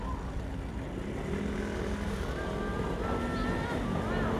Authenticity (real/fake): real